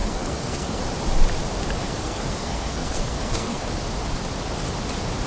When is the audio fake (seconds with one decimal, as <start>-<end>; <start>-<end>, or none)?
0.0-0.8; 1.8-3.7